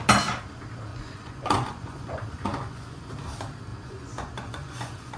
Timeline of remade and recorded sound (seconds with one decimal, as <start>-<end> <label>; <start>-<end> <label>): 0.0-0.9 recorded; 0.9-3.1 remade; 3.1-3.7 recorded; 3.7-5.2 remade